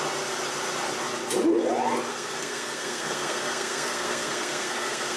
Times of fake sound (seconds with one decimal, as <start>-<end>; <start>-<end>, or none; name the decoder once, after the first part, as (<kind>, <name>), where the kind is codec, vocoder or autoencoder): 2.1-5.2 (codec, SNAC)